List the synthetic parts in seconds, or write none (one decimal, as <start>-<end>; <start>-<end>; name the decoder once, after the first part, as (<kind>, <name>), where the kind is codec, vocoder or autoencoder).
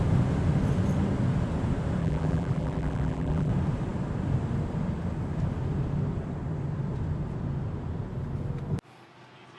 2.0-3.5 (vocoder, BigVGAN v2)